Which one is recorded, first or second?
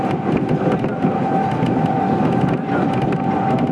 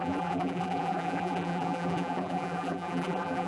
first